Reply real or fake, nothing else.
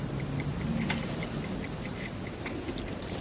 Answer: real